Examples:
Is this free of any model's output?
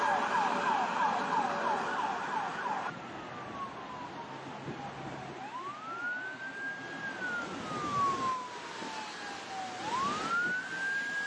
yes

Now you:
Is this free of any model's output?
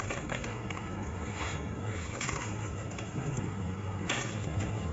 no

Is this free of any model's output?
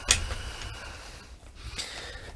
yes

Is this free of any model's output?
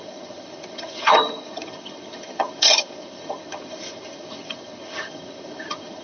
no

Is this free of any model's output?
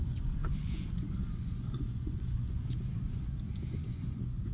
no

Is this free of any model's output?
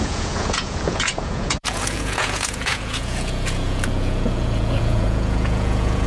no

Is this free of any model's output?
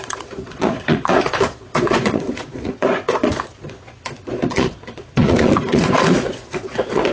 no